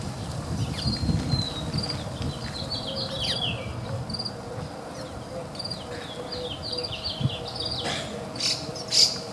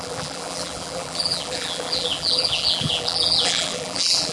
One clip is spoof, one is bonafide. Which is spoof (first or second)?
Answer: second